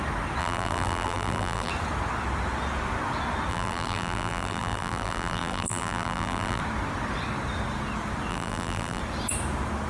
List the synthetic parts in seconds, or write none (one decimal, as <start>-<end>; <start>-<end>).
0.4-1.7; 3.5-6.6; 8.3-9.0